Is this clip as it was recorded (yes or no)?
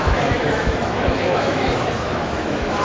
no